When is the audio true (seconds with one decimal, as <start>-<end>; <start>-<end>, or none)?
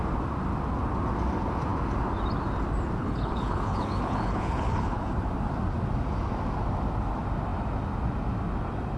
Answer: 0.0-3.0; 5.1-9.0